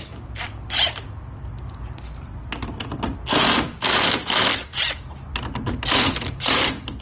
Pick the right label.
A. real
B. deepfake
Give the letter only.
A